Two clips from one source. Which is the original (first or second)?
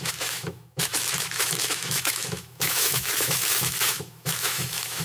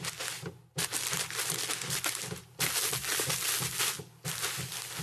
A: second